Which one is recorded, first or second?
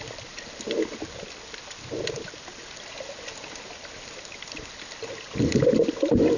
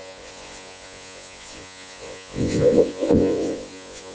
first